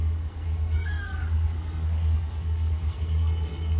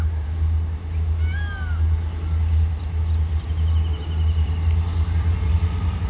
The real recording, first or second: second